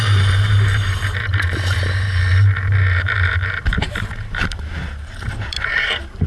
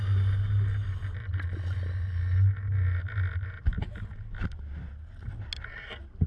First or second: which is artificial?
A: first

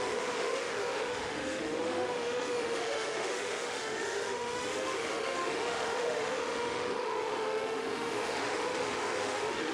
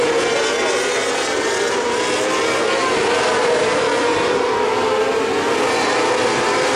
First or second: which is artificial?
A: first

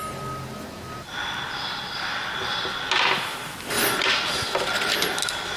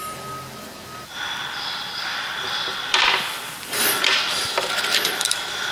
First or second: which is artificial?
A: second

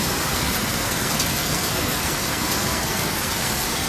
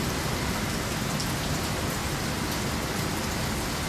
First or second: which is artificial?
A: first